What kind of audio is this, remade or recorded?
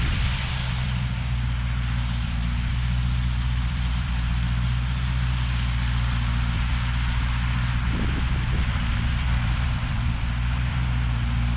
remade